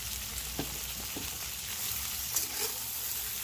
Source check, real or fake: real